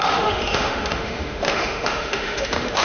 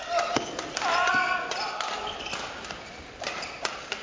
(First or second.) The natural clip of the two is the second